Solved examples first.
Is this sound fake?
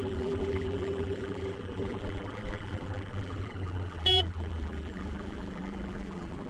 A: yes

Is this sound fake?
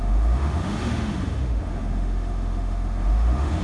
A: yes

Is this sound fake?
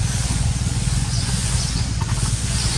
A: yes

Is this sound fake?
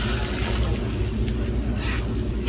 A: no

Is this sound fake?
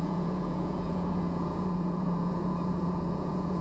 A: yes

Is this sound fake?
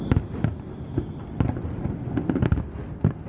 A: no